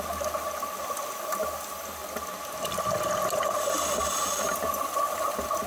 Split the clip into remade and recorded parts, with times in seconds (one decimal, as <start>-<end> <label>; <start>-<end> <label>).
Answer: 0.0-5.7 recorded